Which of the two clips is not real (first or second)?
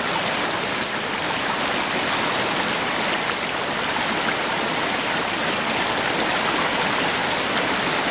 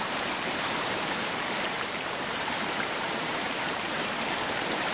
second